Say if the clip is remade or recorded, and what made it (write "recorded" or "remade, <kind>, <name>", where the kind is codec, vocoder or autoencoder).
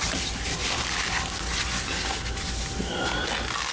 recorded